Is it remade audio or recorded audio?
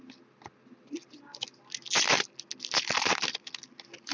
recorded